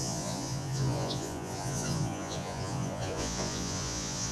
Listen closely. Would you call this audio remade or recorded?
remade